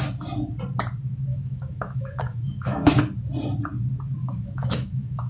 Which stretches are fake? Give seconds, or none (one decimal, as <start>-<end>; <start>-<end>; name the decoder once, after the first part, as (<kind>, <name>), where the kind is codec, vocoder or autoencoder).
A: 1.3-3.0 (autoencoder, DAC-VAE); 4.2-5.3